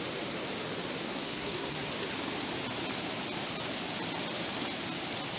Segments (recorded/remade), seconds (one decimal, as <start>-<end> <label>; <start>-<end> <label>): 0.0-1.1 recorded; 1.1-1.9 remade; 1.9-5.4 recorded